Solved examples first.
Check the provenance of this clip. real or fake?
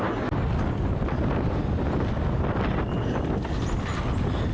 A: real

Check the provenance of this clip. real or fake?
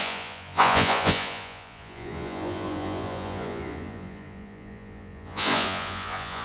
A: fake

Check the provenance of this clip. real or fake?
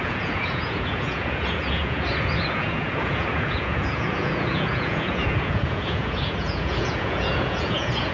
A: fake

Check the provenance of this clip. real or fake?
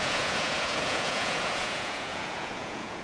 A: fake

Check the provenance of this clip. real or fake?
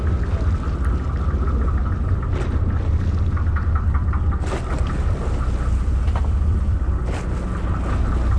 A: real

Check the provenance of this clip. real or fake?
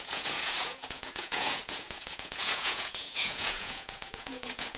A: fake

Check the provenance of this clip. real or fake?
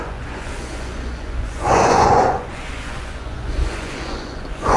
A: fake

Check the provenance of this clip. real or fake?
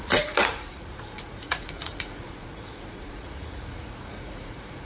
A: fake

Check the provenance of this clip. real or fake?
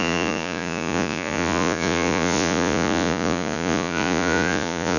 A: fake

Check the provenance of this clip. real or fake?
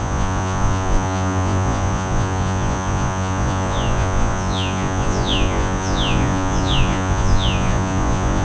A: fake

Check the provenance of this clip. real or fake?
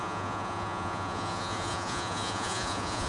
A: fake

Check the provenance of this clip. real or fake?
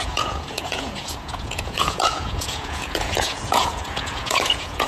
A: fake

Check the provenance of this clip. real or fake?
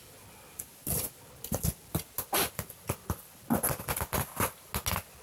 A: real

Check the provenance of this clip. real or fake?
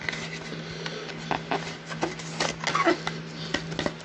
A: real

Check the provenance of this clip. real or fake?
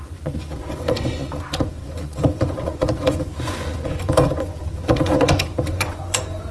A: fake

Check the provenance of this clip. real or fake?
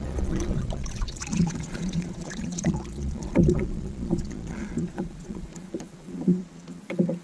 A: fake